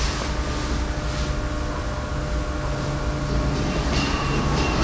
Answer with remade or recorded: recorded